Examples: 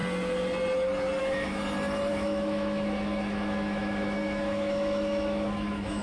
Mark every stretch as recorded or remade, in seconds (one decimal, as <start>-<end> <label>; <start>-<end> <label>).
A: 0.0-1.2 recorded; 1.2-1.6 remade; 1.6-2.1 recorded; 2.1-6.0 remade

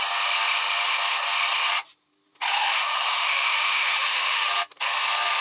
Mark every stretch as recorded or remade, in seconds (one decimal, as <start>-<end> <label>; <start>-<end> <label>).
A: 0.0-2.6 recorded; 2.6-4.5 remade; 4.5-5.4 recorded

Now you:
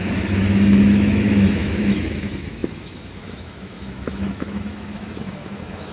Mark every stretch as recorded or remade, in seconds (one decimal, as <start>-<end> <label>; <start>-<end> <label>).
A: 0.0-5.9 remade

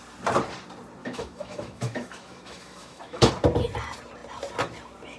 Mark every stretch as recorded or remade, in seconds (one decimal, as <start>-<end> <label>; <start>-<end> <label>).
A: 0.0-1.0 recorded; 1.0-3.3 remade; 3.3-5.2 recorded

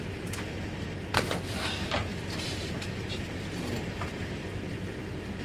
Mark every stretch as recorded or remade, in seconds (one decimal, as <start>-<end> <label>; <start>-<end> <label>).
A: 0.0-5.4 recorded